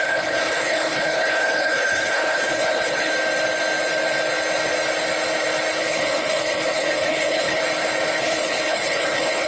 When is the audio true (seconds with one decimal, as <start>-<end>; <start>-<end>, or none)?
3.1-5.8; 7.6-8.2